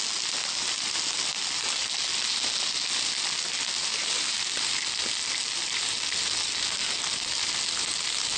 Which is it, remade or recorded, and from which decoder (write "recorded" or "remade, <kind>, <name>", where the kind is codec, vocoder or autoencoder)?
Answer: recorded